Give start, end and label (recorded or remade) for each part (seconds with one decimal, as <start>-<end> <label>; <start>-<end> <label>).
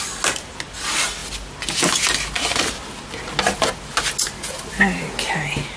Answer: 0.0-5.8 recorded